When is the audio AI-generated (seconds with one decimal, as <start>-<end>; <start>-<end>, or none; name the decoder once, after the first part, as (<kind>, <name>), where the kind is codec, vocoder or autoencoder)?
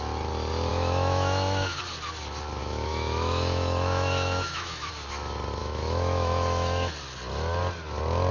0.7-1.8 (autoencoder, DAC-VAE); 2.6-4.9; 5.6-6.9